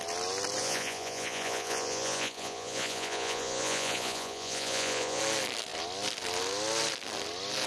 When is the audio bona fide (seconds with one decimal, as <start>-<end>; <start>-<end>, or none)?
0.0-0.6; 5.2-7.7